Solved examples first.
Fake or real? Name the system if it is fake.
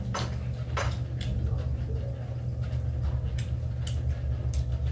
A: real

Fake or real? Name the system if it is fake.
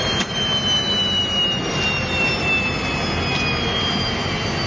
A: real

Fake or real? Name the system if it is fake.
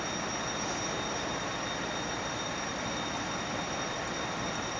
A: real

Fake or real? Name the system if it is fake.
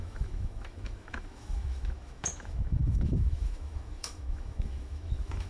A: fake, autoencoder, DAC-VAE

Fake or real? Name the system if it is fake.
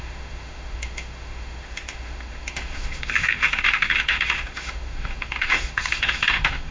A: fake, autoencoder, DAC-VAE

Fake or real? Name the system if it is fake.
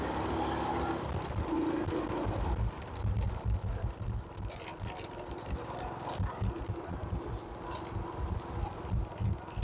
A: real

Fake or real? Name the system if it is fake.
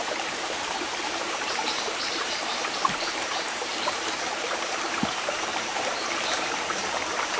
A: fake, vocoder, BigVGAN v2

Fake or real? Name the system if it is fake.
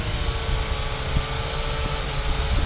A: real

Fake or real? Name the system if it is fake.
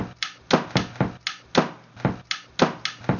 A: real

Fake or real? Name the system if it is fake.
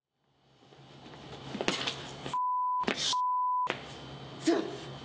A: real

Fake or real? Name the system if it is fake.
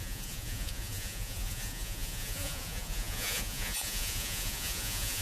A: fake, vocoder, Vocos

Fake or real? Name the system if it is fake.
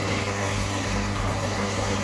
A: fake, codec, SNAC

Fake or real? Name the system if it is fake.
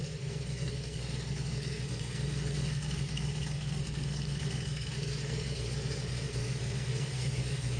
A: fake, codec, SNAC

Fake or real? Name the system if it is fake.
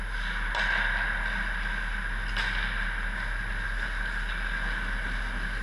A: real